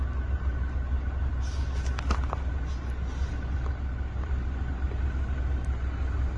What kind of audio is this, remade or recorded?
recorded